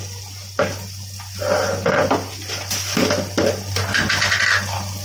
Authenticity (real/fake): real